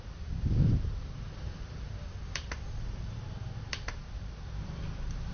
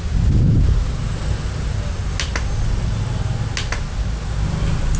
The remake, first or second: first